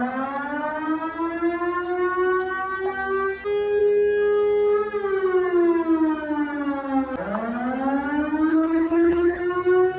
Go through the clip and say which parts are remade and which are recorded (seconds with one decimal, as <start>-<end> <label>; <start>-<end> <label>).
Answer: 0.0-8.5 recorded; 8.5-9.4 remade; 9.4-10.0 recorded

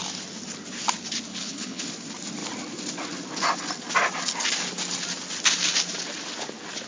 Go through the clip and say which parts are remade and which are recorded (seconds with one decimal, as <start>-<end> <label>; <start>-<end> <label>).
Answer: 0.0-1.3 recorded; 1.3-1.9 remade; 1.9-6.9 recorded

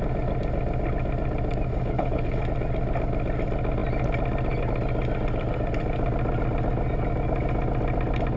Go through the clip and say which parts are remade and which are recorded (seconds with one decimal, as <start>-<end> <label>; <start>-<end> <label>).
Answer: 0.0-1.7 recorded; 1.7-2.4 remade; 2.4-8.4 recorded

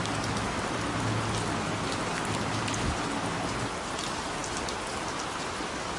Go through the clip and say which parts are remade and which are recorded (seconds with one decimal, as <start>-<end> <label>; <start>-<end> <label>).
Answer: 0.0-6.0 recorded

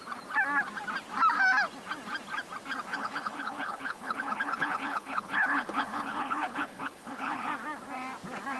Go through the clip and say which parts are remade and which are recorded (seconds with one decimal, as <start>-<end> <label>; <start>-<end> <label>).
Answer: 0.0-2.9 recorded; 2.9-7.5 remade; 7.5-8.6 recorded

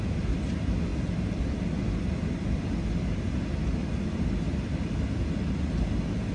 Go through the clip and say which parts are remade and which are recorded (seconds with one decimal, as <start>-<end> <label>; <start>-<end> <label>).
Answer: 0.0-6.3 recorded